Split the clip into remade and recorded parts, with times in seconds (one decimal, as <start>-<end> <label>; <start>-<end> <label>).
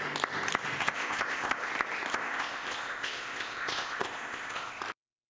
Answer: 0.0-0.8 recorded; 0.8-1.7 remade; 1.7-2.1 recorded; 2.1-4.8 remade; 4.8-5.3 recorded